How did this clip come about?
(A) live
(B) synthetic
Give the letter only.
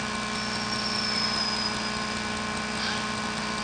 A